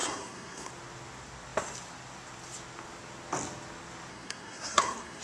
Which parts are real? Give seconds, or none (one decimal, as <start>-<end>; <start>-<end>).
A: 0.7-4.1